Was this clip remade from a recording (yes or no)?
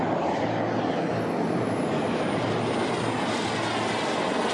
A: no